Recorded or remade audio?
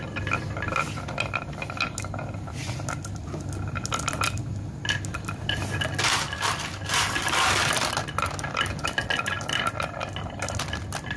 recorded